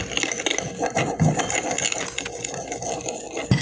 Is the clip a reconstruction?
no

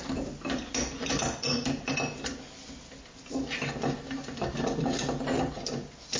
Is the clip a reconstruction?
no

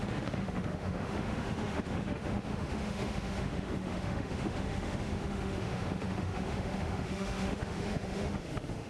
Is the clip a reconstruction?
yes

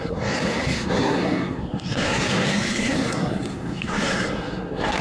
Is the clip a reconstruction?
yes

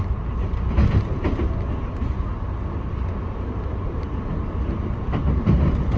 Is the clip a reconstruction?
no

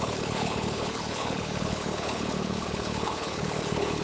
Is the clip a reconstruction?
yes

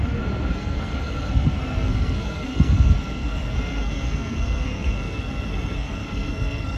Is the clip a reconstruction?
yes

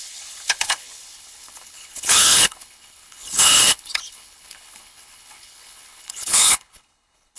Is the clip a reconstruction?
yes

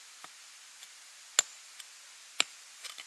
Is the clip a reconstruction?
no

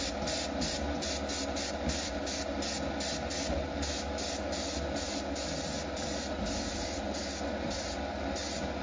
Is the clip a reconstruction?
no